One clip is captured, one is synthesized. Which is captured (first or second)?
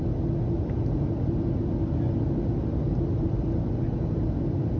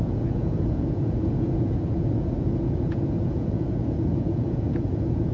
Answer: first